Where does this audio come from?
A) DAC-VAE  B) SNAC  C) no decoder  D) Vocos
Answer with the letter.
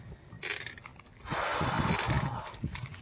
C